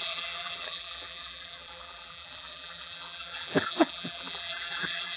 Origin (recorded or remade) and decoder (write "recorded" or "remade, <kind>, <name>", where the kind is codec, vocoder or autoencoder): remade, vocoder, BigVGAN v2